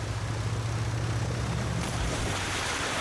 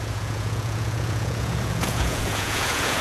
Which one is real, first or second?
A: first